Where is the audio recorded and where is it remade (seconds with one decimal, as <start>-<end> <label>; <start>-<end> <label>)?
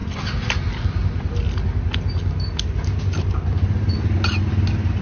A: 0.0-5.0 recorded